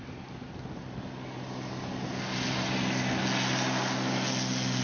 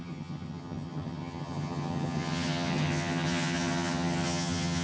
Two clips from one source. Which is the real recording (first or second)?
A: first